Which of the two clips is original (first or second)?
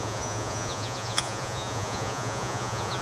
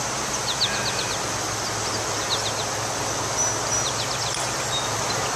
second